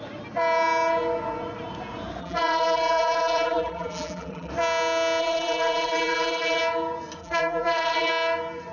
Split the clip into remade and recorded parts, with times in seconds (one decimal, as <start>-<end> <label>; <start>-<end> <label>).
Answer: 0.0-2.2 recorded; 2.2-4.5 remade; 4.5-5.2 recorded; 5.2-6.6 remade; 6.6-7.2 recorded; 7.2-8.1 remade; 8.1-8.7 recorded